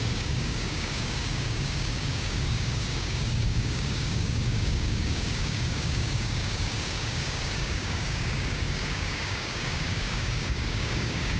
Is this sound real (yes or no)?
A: no